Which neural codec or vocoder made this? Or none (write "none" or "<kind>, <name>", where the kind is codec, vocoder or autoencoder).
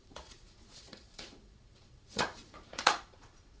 vocoder, Vocos